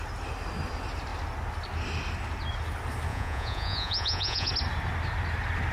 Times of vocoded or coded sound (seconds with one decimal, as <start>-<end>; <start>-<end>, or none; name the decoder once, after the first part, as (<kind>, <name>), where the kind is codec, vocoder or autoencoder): 3.1-4.5 (vocoder, Vocos)